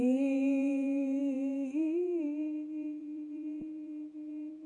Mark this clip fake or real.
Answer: fake